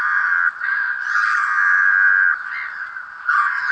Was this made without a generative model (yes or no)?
yes